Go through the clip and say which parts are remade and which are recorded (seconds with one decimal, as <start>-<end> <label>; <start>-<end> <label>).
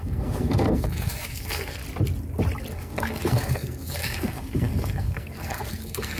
0.0-1.8 remade; 1.8-2.7 recorded; 2.7-6.2 remade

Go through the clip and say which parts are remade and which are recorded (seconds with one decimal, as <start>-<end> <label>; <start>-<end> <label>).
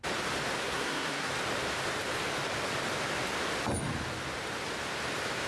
0.0-0.6 recorded; 0.6-1.3 remade; 1.3-5.5 recorded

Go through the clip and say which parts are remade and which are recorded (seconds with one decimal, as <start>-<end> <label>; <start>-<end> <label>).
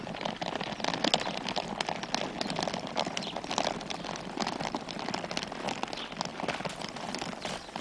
0.0-7.8 recorded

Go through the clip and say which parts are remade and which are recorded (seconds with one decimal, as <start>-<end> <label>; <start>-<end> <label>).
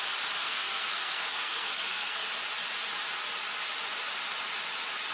0.0-0.4 recorded; 0.4-2.3 remade; 2.3-5.1 recorded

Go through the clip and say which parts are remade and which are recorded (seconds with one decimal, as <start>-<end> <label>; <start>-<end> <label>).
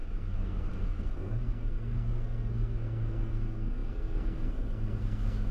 0.0-5.5 remade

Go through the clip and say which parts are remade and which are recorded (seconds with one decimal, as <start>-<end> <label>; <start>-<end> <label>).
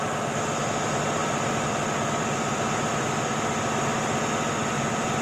0.0-5.2 recorded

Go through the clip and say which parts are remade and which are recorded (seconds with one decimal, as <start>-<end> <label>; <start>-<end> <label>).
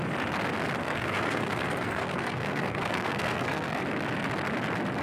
0.0-0.8 recorded; 0.8-3.8 remade; 3.8-5.0 recorded